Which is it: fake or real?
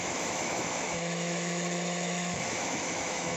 fake